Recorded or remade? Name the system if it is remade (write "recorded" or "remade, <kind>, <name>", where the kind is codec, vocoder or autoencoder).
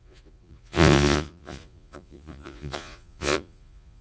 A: remade, vocoder, Vocos